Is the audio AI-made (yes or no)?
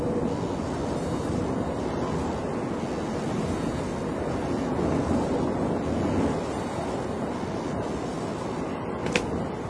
no